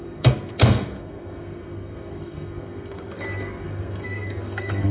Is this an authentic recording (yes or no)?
no